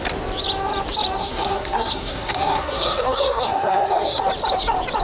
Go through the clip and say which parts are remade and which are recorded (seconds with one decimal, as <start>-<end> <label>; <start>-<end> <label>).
0.0-1.2 recorded; 1.2-4.2 remade; 4.2-5.0 recorded

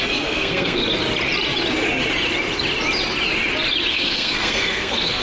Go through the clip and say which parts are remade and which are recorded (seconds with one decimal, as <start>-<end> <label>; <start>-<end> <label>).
0.0-0.8 remade; 0.8-3.9 recorded; 3.9-5.2 remade